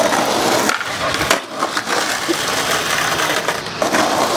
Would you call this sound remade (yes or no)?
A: no